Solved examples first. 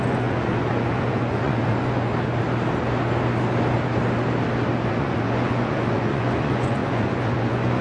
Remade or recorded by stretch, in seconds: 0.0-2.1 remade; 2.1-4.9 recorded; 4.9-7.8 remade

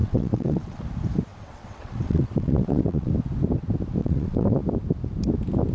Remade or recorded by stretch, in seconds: 0.0-0.8 remade; 0.8-1.3 recorded; 1.3-3.1 remade; 3.1-4.0 recorded; 4.0-4.6 remade; 4.6-5.7 recorded